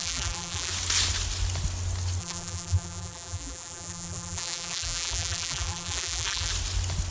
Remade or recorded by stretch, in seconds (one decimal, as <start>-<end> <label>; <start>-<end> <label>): 0.0-0.7 remade; 0.7-2.2 recorded; 2.2-6.5 remade; 6.5-7.1 recorded